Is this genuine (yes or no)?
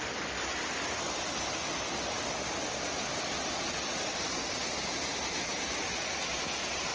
yes